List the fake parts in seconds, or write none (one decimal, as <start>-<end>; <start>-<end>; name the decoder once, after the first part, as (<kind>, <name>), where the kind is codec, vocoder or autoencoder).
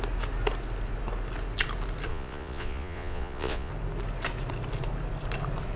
2.1-3.7 (vocoder, Vocos)